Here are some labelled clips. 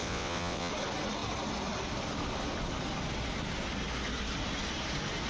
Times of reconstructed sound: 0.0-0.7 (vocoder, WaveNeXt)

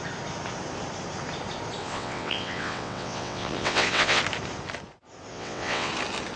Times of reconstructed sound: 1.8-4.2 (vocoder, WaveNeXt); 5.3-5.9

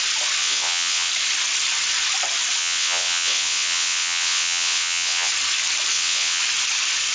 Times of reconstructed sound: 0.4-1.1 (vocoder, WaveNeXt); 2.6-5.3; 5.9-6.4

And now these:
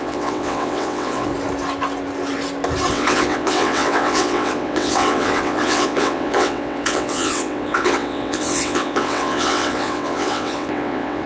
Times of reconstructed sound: 0.0-1.3 (vocoder, WaveNeXt); 2.9-11.3

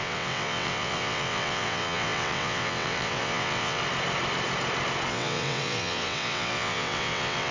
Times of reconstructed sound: 0.0-3.8 (vocoder, WaveNeXt); 5.1-7.5

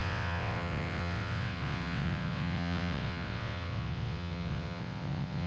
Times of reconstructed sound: 0.0-5.5 (vocoder, WaveNeXt)

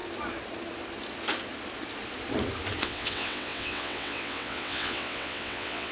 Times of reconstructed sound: 2.8-5.9 (vocoder, WaveNeXt)

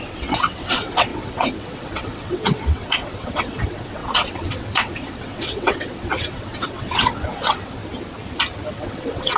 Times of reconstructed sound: 0.0-7.8 (vocoder, WaveNeXt); 8.8-9.4